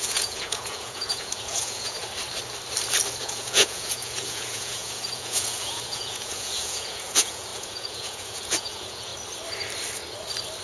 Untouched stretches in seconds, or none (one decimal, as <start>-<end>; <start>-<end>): 2.0-3.2; 9.1-10.6